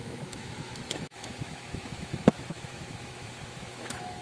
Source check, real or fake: fake